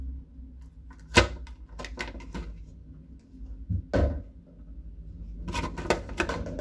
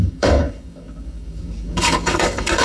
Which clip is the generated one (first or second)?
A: second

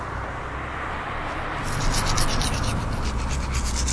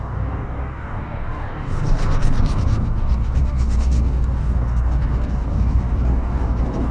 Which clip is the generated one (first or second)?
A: second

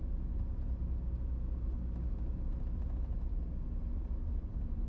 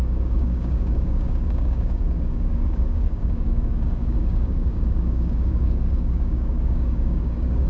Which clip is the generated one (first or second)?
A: second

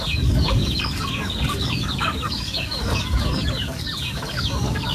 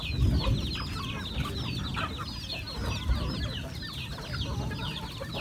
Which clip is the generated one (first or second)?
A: first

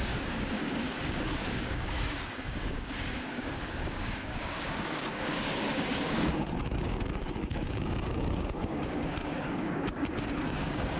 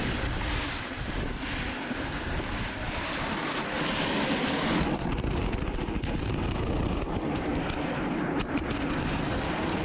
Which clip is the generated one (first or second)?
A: first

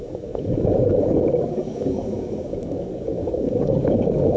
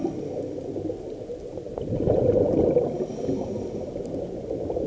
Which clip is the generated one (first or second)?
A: first